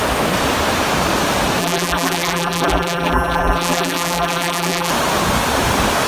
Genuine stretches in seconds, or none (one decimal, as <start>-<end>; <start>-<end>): 0.0-1.6; 4.9-6.1